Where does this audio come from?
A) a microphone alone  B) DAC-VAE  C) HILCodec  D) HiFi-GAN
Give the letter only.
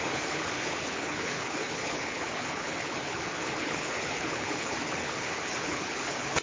C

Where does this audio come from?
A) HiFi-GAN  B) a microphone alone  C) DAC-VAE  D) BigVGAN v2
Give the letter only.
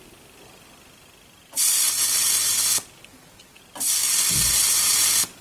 D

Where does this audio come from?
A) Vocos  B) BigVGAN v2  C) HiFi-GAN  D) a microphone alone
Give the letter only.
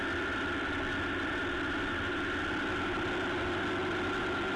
D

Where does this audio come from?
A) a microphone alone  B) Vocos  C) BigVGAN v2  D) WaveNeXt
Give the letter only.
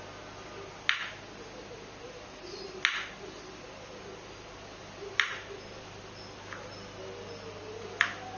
A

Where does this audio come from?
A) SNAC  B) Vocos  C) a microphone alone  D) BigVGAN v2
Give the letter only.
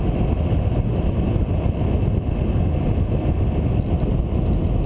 C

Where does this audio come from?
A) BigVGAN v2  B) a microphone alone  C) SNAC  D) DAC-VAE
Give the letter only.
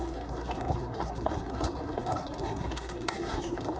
C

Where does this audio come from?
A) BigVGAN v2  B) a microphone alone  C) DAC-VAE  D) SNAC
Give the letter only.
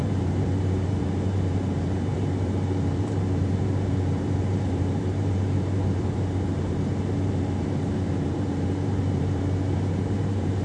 A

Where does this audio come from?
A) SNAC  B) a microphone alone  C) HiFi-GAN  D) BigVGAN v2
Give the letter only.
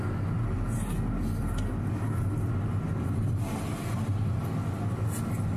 B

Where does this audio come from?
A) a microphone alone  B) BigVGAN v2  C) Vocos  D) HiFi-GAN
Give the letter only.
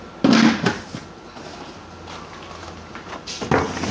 A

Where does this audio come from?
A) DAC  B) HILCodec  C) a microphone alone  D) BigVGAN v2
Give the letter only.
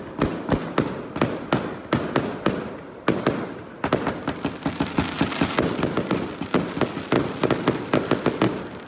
C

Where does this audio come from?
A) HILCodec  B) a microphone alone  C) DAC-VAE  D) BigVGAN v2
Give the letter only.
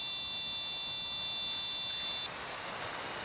B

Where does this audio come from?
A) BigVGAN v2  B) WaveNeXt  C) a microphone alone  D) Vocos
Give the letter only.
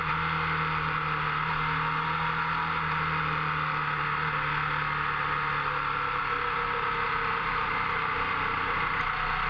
C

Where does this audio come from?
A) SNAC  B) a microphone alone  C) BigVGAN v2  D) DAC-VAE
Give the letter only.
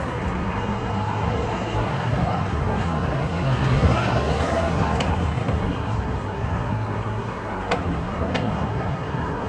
A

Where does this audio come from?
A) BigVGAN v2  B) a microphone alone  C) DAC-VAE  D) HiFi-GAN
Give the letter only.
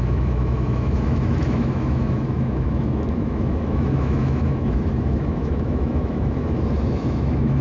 C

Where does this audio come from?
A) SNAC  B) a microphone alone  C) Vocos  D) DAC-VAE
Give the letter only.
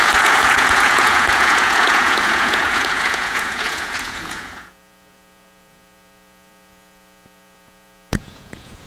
C